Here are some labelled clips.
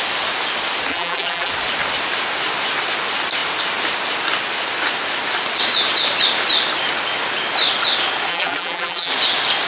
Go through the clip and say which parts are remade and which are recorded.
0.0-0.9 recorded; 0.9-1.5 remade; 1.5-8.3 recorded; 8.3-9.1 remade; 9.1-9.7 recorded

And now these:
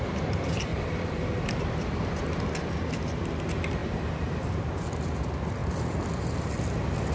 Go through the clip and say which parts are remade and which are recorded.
0.0-0.7 recorded; 0.7-1.5 remade; 1.5-3.8 recorded; 3.8-4.4 remade; 4.4-7.1 recorded

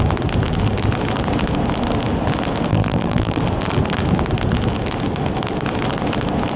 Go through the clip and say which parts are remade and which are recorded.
0.0-2.7 recorded; 2.7-3.4 remade; 3.4-6.6 recorded

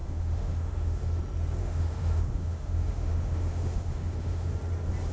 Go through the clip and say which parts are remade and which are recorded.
0.0-1.0 remade; 1.0-1.6 recorded; 1.6-4.5 remade; 4.5-5.1 recorded

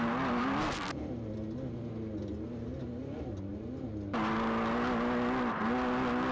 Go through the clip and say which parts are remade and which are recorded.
0.0-6.3 recorded

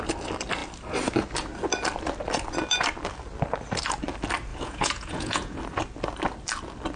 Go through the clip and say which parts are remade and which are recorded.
0.0-4.5 recorded; 4.5-5.6 remade; 5.6-7.0 recorded

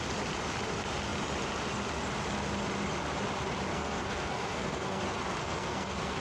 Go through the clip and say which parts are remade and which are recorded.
0.0-3.7 recorded; 3.7-5.0 remade; 5.0-5.4 recorded; 5.4-6.2 remade